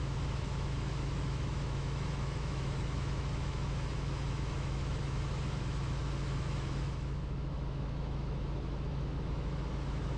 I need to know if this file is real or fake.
fake